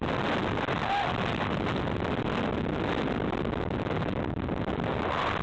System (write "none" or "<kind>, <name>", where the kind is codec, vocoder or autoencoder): none